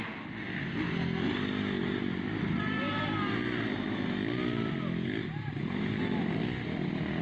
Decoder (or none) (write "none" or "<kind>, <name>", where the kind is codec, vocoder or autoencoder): none